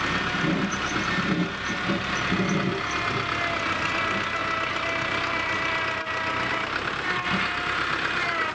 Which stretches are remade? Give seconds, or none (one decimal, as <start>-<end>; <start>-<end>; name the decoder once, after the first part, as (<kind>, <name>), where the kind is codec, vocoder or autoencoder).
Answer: none